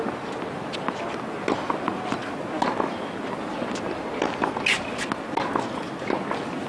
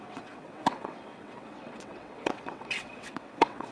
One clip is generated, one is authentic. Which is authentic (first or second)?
first